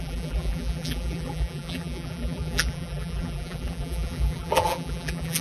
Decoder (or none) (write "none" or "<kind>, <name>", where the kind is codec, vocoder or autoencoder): vocoder, BigVGAN v2